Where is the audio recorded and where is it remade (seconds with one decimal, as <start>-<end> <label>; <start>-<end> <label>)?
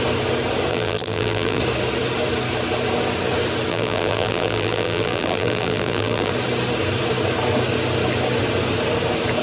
0.0-0.7 recorded; 0.7-1.6 remade; 1.6-3.7 recorded; 3.7-6.3 remade; 6.3-9.4 recorded